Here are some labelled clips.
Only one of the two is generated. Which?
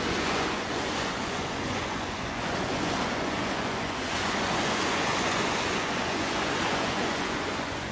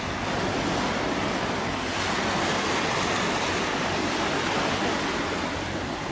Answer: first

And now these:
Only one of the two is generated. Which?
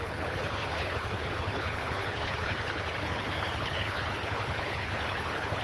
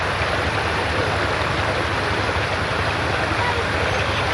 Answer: first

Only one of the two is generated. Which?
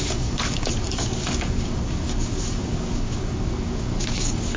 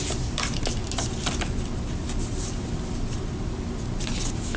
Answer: first